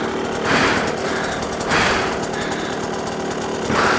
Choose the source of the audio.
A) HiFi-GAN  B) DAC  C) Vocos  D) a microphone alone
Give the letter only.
D